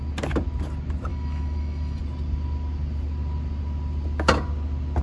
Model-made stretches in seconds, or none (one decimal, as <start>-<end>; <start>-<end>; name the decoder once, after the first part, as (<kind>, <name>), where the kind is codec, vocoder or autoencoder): 1.1-2.0 (autoencoder, DAC-VAE)